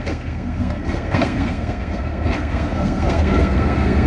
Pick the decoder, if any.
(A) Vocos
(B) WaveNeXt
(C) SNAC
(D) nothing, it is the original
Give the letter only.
C